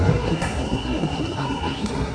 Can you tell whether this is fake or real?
fake